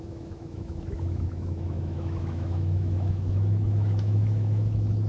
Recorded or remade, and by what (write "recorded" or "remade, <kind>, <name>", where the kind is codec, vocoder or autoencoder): remade, autoencoder, DAC-VAE